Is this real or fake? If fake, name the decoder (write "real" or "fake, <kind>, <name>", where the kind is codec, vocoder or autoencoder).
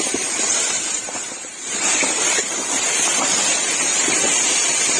fake, vocoder, BigVGAN v2